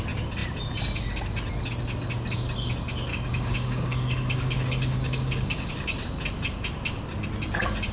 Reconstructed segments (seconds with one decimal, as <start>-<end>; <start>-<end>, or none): 3.1-5.7